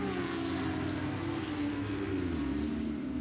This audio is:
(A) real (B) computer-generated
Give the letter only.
A